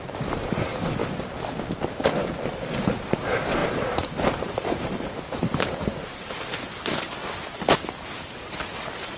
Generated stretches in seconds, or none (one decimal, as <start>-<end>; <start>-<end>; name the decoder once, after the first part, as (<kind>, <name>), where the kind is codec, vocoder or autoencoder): 0.0-1.0 (vocoder, BigVGAN v2); 2.5-7.2; 8.0-9.2